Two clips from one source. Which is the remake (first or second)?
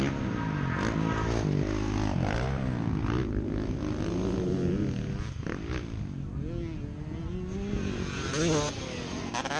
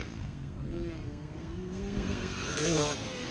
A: second